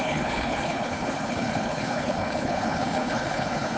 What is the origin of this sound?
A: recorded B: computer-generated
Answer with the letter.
B